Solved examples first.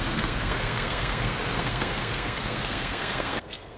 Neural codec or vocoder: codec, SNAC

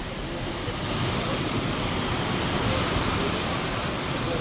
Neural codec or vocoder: none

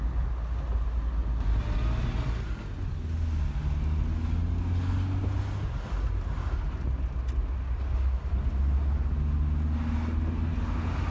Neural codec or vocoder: none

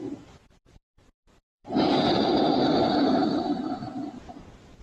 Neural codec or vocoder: vocoder, BigVGAN v2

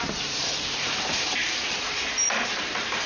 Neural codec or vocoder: vocoder, BigVGAN v2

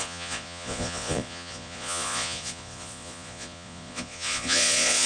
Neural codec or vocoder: vocoder, Vocos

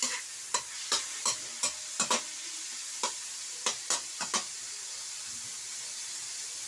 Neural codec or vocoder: none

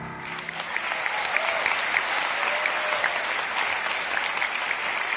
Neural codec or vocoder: none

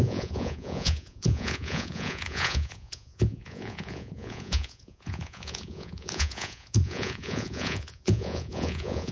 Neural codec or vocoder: vocoder, Vocos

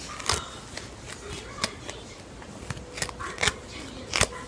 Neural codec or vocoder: none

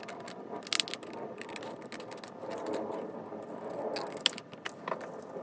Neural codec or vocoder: none